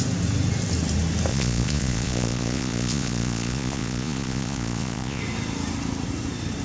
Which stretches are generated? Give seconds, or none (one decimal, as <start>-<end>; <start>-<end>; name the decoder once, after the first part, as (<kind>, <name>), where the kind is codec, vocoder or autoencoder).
1.3-5.2 (vocoder, Vocos)